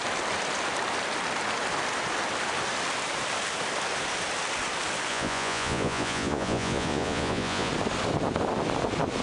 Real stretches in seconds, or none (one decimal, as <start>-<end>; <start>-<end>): 0.0-5.1; 7.7-9.2